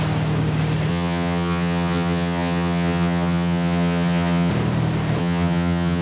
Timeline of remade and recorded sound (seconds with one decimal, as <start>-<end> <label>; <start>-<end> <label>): 0.0-0.9 recorded; 0.9-4.5 remade; 4.5-5.2 recorded; 5.2-6.0 remade